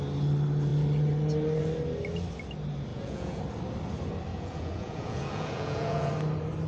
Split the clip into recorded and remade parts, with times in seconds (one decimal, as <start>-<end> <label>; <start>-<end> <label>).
0.0-2.9 recorded; 2.9-3.4 remade; 3.4-4.3 recorded; 4.3-6.1 remade; 6.1-6.7 recorded